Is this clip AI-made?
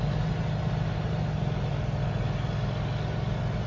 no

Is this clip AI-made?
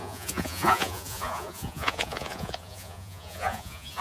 yes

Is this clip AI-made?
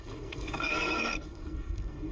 yes